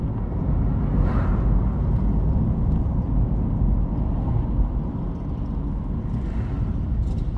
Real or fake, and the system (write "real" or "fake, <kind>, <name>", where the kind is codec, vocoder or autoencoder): real